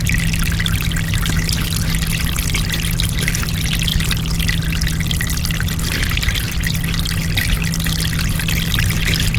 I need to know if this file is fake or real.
real